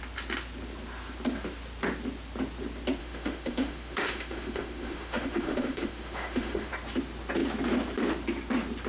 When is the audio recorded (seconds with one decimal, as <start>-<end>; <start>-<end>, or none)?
0.0-3.0; 6.7-8.9